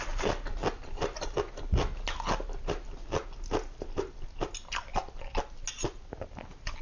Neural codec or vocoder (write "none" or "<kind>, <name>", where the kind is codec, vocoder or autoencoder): none